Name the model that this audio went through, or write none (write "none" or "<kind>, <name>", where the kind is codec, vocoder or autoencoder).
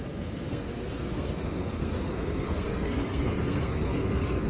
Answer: codec, SNAC